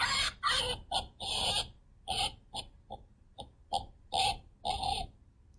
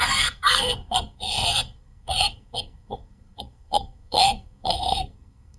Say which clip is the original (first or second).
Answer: first